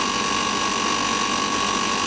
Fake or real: real